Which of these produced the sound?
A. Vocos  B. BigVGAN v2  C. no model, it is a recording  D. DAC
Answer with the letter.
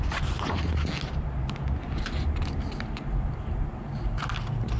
C